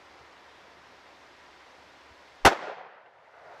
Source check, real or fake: real